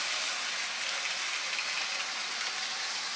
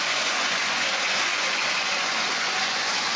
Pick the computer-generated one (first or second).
second